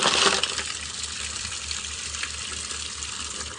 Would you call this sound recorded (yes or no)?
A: no